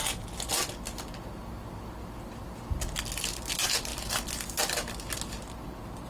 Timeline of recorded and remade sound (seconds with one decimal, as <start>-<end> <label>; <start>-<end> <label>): 0.0-6.1 recorded

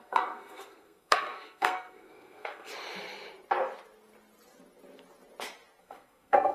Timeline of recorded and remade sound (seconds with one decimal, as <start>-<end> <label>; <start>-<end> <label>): 0.0-2.7 remade; 2.7-5.8 recorded; 5.8-6.5 remade

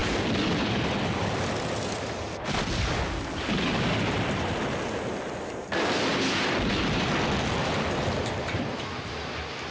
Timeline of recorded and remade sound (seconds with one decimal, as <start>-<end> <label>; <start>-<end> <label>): 0.0-9.7 recorded

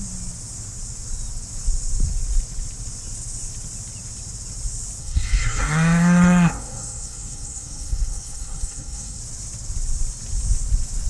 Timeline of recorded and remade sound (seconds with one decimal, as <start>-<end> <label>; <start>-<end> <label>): 0.0-5.0 recorded; 5.0-9.2 remade; 9.2-11.1 recorded